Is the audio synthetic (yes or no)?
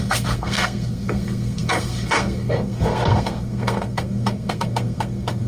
yes